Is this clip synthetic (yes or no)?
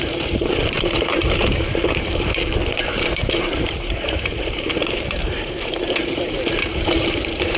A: yes